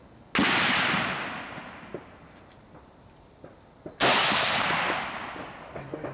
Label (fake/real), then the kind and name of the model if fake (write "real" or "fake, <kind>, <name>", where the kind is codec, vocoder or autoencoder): real